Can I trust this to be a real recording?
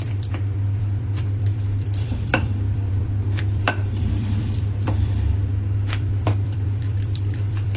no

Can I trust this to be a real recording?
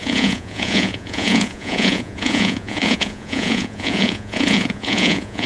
no